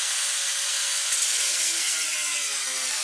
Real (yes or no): no